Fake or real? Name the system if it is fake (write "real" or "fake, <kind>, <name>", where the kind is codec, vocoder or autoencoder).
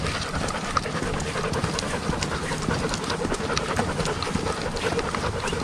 real